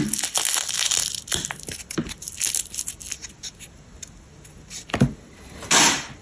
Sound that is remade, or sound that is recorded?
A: recorded